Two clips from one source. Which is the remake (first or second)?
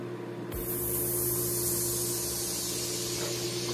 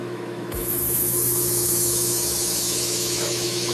second